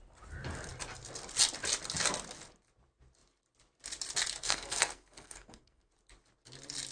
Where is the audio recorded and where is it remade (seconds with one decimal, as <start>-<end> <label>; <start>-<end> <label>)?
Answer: 0.0-4.4 recorded; 4.4-5.9 remade; 5.9-6.9 recorded